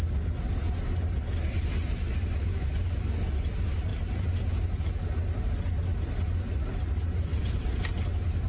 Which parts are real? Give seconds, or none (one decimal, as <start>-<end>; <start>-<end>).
0.0-3.9; 4.9-7.3; 7.8-8.5